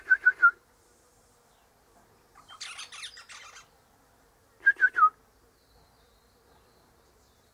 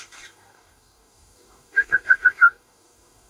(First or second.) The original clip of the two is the first